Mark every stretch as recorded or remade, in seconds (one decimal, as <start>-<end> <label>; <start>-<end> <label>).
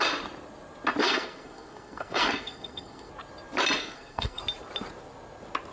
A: 0.0-1.0 recorded; 1.0-3.1 remade; 3.1-3.8 recorded; 3.8-4.4 remade; 4.4-5.7 recorded